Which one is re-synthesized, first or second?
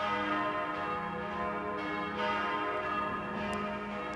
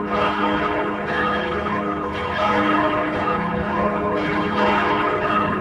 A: second